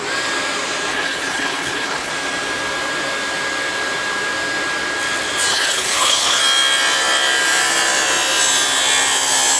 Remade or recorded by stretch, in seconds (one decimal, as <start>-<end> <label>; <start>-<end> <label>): 0.0-0.9 recorded; 0.9-2.1 remade; 2.1-5.5 recorded; 5.5-6.4 remade; 6.4-9.6 recorded